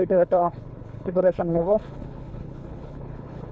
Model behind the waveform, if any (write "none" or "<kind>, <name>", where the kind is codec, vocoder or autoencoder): codec, HILCodec